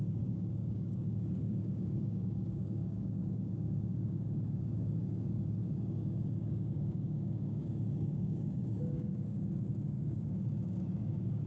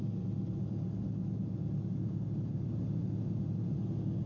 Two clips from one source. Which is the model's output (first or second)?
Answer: first